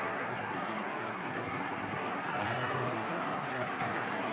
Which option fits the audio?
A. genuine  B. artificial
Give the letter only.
B